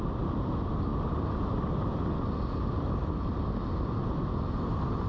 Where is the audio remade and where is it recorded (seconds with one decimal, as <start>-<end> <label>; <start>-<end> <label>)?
0.0-5.1 recorded